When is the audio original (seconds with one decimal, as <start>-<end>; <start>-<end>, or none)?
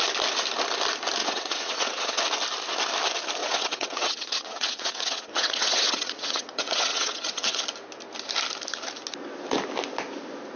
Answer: 0.0-1.2; 2.2-3.4; 7.6-10.6